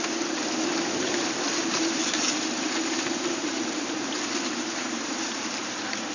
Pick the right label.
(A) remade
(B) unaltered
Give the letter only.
A